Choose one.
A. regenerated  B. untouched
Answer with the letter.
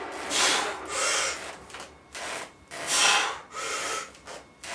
B